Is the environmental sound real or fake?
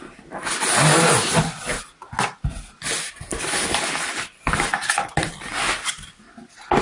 real